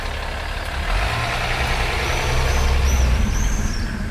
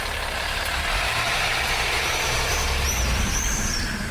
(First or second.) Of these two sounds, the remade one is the second